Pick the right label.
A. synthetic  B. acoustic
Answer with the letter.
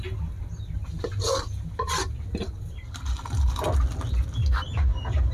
B